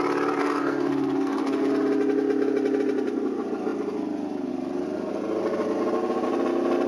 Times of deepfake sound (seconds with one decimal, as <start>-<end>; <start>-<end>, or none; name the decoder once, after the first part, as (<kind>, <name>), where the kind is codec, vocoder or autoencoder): 0.4-1.7 (codec, SNAC)